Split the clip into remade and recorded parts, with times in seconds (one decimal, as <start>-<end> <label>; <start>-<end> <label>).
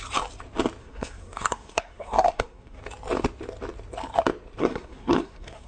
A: 0.0-0.8 recorded; 0.8-2.8 remade; 2.8-4.6 recorded; 4.6-5.7 remade